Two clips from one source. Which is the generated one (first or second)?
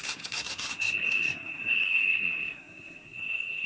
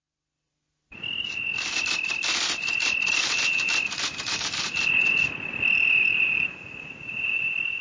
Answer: first